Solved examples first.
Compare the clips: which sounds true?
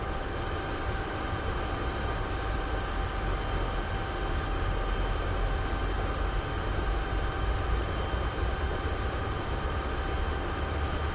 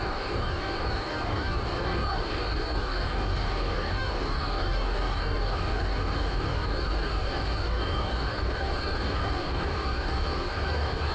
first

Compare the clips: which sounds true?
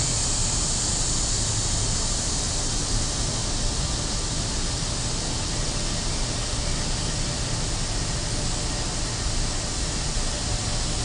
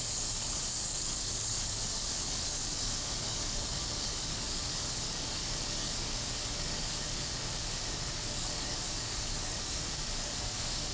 first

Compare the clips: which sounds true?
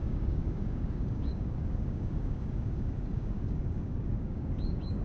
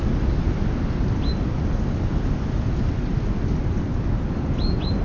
second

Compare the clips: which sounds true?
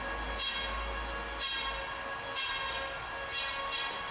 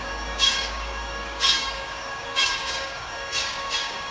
first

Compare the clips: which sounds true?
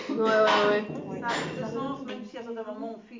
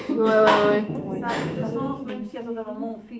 first